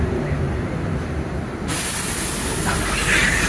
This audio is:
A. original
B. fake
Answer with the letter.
A